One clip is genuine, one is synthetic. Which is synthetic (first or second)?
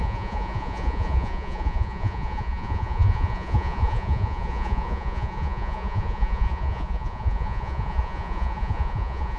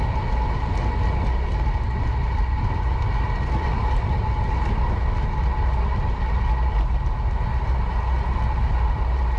first